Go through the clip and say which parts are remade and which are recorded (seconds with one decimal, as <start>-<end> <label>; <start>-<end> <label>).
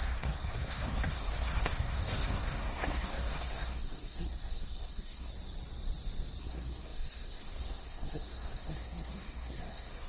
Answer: 0.0-5.3 remade; 5.3-6.4 recorded; 6.4-10.1 remade